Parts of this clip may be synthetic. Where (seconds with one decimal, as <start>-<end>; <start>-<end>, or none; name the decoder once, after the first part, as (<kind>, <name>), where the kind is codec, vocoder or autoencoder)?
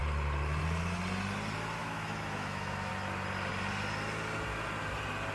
1.8-2.9 (autoencoder, DAC-VAE)